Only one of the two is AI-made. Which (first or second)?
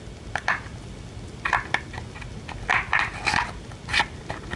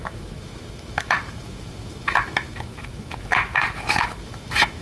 second